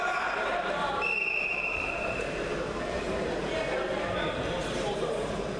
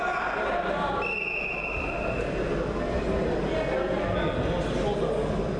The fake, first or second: first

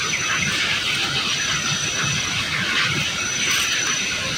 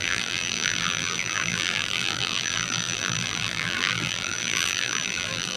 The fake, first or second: second